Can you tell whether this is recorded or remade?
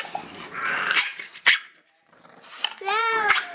remade